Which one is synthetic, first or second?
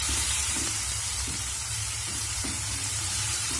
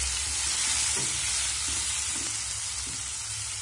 first